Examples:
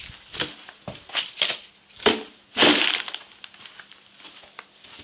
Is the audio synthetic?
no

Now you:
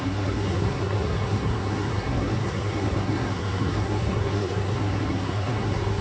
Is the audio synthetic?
yes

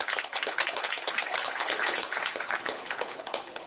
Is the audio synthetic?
yes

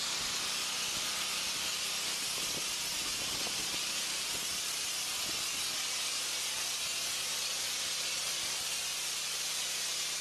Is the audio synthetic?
no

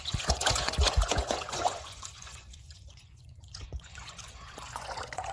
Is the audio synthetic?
yes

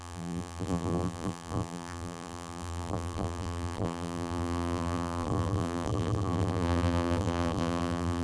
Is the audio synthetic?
yes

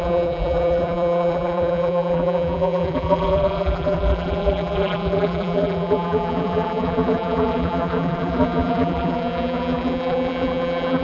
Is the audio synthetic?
yes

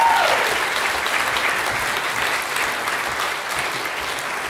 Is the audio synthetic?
no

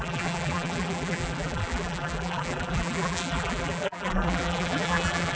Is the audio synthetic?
yes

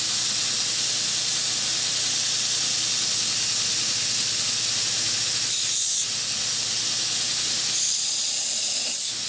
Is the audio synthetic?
no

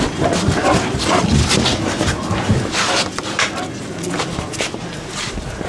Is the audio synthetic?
yes